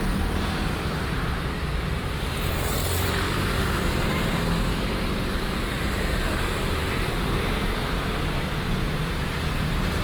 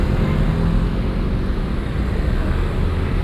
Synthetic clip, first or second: first